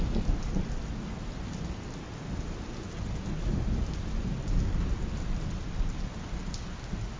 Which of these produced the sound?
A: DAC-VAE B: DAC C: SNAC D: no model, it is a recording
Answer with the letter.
D